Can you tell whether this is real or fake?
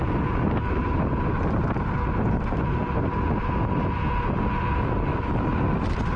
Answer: real